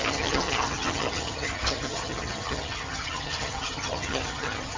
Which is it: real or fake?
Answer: fake